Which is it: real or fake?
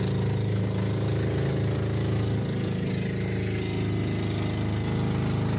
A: real